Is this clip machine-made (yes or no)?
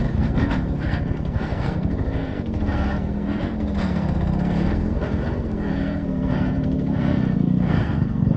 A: yes